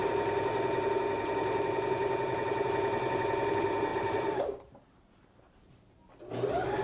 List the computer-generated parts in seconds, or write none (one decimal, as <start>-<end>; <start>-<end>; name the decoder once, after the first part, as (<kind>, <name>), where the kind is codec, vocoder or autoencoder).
3.9-6.1 (vocoder, BigVGAN v2)